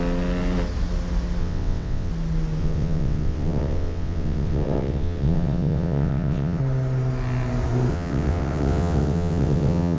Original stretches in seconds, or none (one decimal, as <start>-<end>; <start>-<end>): 0.0-1.4; 2.1-2.6; 6.6-7.9